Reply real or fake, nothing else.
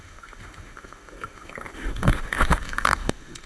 fake